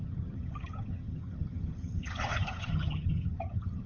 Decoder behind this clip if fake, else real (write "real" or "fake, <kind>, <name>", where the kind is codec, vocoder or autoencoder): fake, vocoder, HiFi-GAN